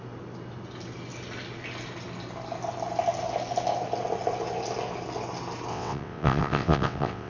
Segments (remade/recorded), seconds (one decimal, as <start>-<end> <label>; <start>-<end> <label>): 0.0-5.7 recorded; 5.7-7.3 remade